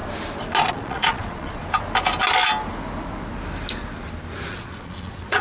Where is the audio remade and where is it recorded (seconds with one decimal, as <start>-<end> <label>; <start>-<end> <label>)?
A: 0.0-0.7 recorded; 0.7-1.6 remade; 1.6-4.5 recorded; 4.5-5.4 remade